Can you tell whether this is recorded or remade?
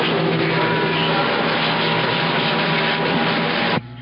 recorded